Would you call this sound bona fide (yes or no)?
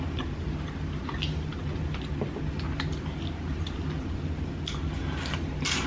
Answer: yes